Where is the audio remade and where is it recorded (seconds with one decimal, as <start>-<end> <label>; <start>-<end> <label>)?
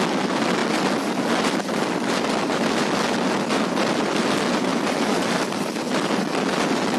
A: 0.0-4.7 recorded; 4.7-5.8 remade; 5.8-7.0 recorded